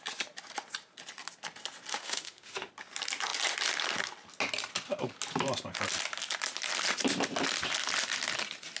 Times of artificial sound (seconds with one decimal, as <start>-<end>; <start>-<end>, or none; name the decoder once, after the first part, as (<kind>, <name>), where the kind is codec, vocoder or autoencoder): 1.9-2.7 (autoencoder, DAC-VAE)